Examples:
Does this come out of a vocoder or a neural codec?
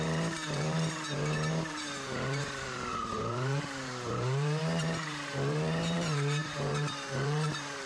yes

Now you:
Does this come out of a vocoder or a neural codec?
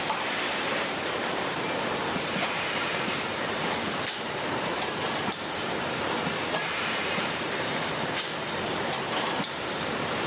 yes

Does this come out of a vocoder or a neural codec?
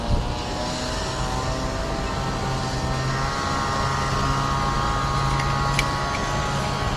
no